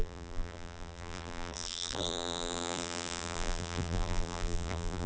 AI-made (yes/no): yes